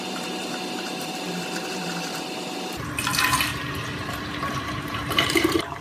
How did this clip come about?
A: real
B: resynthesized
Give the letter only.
B